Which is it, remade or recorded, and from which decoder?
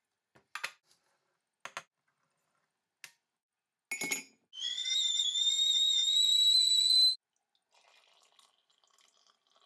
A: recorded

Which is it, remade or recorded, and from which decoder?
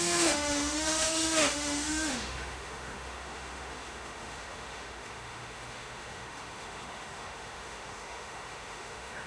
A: remade, autoencoder, DAC-VAE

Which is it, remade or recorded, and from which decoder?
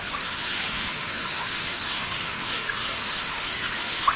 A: remade, autoencoder, DAC-VAE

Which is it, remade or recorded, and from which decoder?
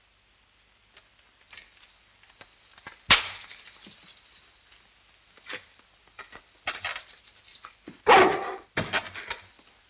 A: recorded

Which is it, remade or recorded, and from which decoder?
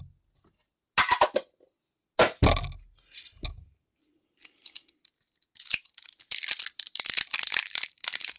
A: recorded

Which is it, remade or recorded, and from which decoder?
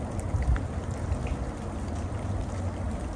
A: recorded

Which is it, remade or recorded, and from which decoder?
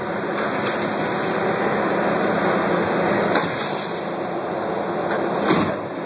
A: recorded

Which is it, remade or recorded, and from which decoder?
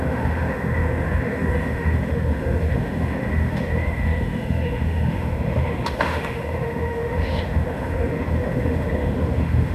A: remade, autoencoder, DAC-VAE